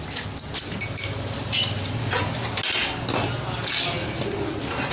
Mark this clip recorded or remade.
recorded